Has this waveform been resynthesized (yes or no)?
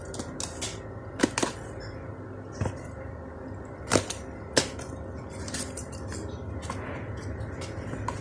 no